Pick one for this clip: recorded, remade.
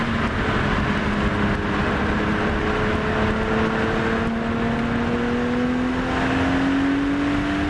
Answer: recorded